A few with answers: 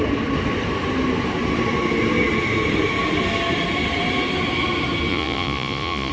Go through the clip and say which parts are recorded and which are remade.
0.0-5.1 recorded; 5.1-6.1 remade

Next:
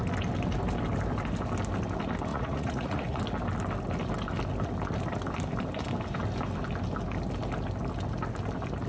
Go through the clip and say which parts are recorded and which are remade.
0.0-2.3 recorded; 2.3-3.2 remade; 3.2-8.9 recorded

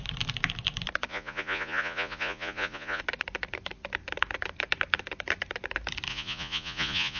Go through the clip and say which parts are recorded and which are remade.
0.0-1.1 recorded; 1.1-3.0 remade; 3.0-6.1 recorded; 6.1-7.2 remade